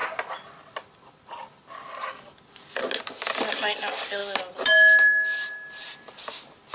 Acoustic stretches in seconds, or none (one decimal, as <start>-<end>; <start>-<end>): 0.0-6.7